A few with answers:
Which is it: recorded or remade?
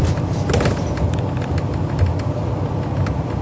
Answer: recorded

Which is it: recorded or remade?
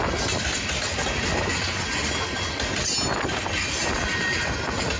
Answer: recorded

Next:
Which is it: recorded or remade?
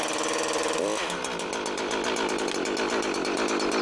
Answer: recorded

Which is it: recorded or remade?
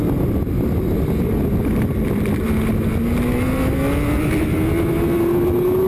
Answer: recorded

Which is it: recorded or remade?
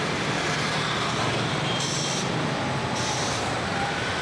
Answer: remade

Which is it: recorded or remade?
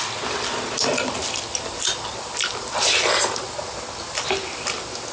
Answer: recorded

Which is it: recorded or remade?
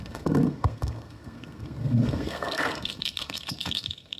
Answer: remade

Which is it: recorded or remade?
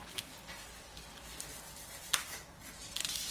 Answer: recorded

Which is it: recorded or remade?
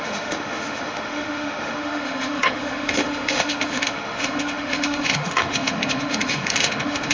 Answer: remade